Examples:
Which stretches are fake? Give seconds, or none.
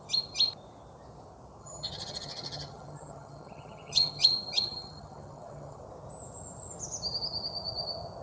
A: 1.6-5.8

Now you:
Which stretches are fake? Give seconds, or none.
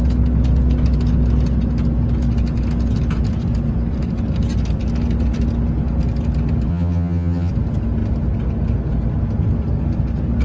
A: 6.7-7.5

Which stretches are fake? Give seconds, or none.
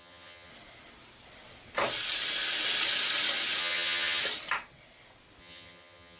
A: 0.0-0.5; 3.6-4.2; 5.4-6.2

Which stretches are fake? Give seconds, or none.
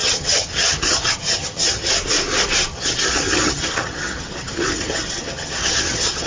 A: 0.0-1.9; 2.7-6.3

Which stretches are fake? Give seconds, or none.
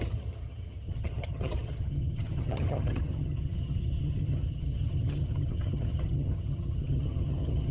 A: 0.0-7.7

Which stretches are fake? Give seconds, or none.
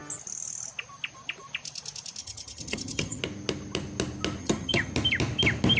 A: 2.2-3.2; 4.4-4.9